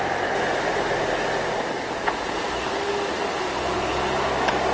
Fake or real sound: real